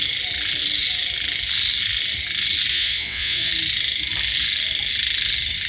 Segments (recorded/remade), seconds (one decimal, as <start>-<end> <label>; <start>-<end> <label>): 0.0-2.7 recorded; 2.7-3.5 remade; 3.5-5.7 recorded